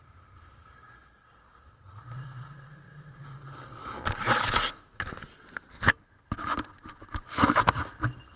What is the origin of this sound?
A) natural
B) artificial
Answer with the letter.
A